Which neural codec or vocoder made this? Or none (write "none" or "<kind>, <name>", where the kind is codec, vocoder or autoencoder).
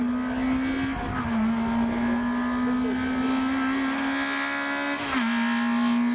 none